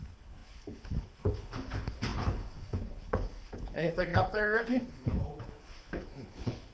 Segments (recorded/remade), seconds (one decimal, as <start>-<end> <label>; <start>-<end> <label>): 0.0-6.7 remade